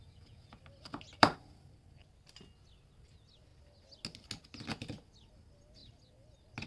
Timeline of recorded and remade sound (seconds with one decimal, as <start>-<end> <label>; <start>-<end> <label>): 0.0-0.6 remade; 0.6-6.7 recorded